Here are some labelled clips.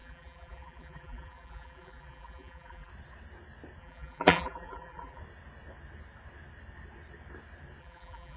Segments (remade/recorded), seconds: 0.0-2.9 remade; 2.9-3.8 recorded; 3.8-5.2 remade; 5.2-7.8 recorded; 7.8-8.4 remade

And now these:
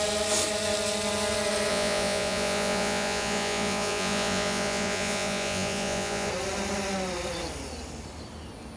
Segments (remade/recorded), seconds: 0.0-1.7 recorded; 1.7-6.3 remade; 6.3-8.8 recorded